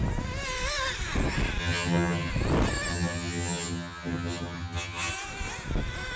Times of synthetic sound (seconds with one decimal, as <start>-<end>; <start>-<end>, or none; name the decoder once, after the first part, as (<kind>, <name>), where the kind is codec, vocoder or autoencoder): 1.6-2.3 (vocoder, HiFi-GAN); 2.9-5.1